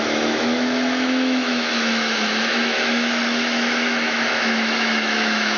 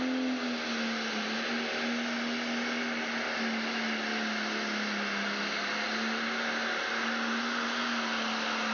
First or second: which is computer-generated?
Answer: first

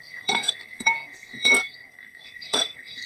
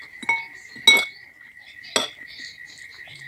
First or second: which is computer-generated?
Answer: first